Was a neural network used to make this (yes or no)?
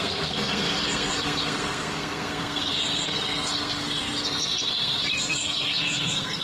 yes